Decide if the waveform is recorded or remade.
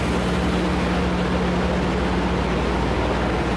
recorded